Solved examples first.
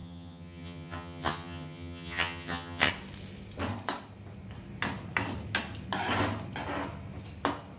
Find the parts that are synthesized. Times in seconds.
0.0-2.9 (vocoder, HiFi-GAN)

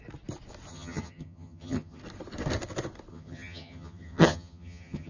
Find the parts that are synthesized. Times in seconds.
0.7-2.0 (vocoder, HiFi-GAN); 3.1-5.1

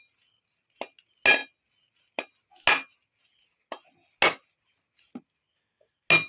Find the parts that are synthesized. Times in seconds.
none